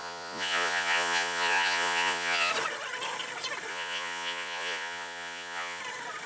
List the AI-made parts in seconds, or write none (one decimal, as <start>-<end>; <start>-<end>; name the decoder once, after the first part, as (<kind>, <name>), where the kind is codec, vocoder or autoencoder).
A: 0.0-2.5 (vocoder, Vocos); 3.7-5.8